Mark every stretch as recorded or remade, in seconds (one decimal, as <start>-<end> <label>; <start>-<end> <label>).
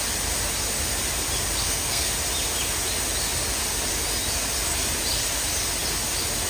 0.0-1.6 recorded; 1.6-2.1 remade; 2.1-6.5 recorded